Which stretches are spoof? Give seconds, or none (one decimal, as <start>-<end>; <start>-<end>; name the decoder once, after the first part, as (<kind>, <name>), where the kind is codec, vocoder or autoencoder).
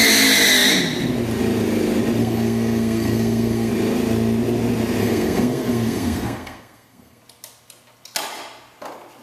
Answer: 2.2-3.7 (codec, SNAC); 5.0-7.2